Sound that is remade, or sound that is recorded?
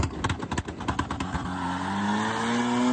recorded